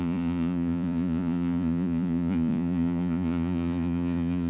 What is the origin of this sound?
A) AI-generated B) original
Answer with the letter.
A